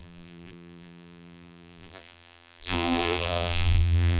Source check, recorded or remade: remade